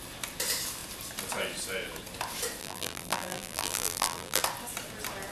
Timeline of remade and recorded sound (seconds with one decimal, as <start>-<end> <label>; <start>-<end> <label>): 0.0-2.6 recorded; 2.6-4.4 remade; 4.4-5.3 recorded